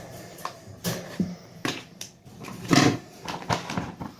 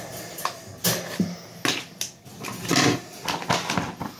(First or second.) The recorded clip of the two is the second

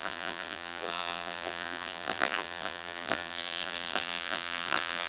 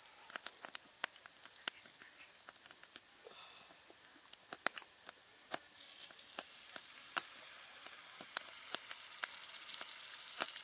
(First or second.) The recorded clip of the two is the second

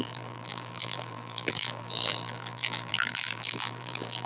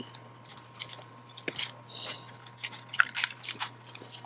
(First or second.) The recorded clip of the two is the second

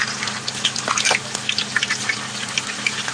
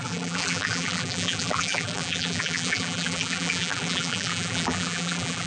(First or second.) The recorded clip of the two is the first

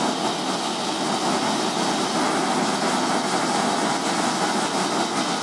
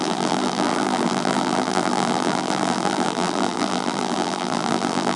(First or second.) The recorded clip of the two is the first